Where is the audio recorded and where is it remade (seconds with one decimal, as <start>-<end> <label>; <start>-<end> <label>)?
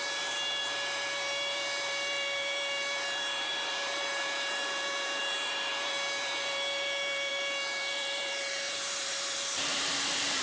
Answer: 0.0-10.4 remade